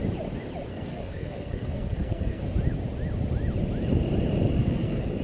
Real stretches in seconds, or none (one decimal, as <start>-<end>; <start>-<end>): 0.0-0.7; 2.4-4.6